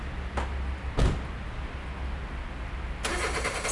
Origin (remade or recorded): recorded